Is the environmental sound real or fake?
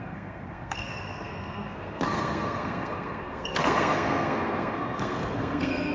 fake